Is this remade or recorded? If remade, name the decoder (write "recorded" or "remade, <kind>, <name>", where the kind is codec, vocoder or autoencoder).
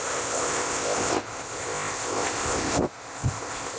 remade, codec, ZipCodec